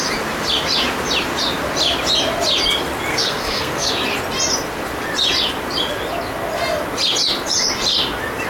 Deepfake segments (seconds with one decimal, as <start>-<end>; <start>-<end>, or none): 3.1-3.9